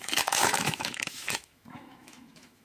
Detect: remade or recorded remade